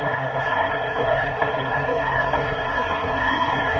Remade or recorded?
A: remade